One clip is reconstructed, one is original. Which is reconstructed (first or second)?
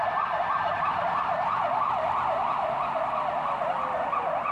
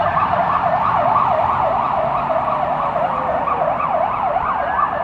second